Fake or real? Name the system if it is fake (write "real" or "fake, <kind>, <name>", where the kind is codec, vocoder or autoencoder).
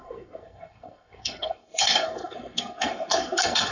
fake, codec, SNAC